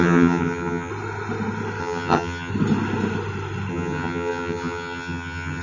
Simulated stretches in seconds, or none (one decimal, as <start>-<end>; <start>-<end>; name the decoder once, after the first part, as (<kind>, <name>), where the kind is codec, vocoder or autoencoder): 0.0-0.9 (vocoder, HiFi-GAN); 1.8-2.5; 3.7-5.6